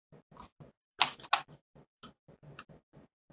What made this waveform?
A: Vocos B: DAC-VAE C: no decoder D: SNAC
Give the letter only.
C